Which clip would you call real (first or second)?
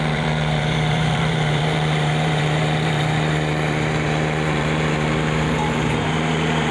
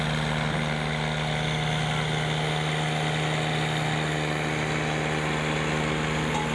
second